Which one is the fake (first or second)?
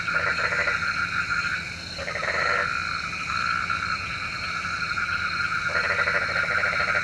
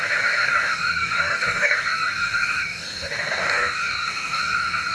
second